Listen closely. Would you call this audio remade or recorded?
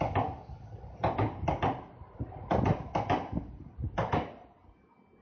recorded